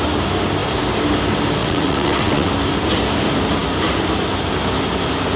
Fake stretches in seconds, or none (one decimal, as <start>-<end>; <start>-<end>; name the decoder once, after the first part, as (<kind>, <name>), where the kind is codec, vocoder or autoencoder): 1.6-2.5 (vocoder, WaveNeXt)